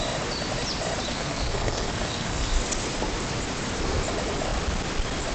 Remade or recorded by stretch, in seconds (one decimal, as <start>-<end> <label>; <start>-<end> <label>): 0.0-1.1 recorded; 1.1-2.6 remade; 2.6-5.3 recorded